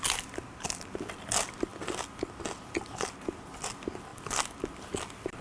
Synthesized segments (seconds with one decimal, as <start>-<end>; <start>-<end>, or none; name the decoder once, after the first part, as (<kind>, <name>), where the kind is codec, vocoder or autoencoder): none